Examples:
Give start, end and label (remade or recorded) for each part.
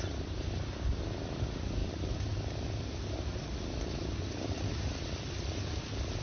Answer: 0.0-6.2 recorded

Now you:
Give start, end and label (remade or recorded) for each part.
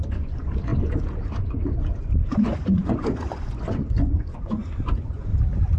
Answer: 0.0-5.3 remade; 5.3-5.8 recorded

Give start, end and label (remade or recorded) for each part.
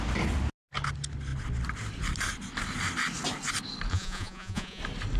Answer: 0.0-3.9 recorded; 3.9-4.8 remade; 4.8-5.2 recorded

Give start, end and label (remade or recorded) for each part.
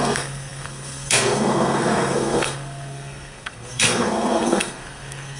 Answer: 0.0-5.4 remade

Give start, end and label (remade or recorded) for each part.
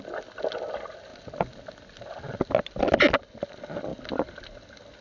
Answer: 0.0-5.0 recorded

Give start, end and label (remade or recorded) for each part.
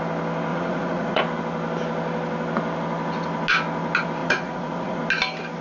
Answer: 0.0-0.5 recorded; 0.5-1.2 remade; 1.2-4.2 recorded; 4.2-5.0 remade; 5.0-5.6 recorded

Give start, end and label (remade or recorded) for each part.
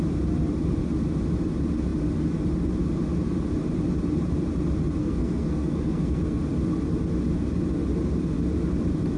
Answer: 0.0-5.0 recorded; 5.0-6.4 remade; 6.4-9.2 recorded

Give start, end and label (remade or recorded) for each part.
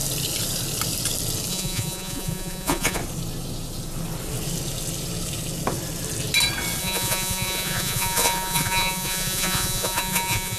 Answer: 0.0-1.5 recorded; 1.5-3.0 remade; 3.0-6.8 recorded; 6.8-10.6 remade